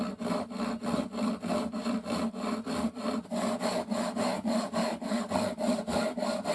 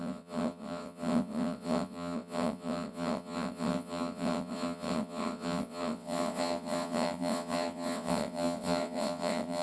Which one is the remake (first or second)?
second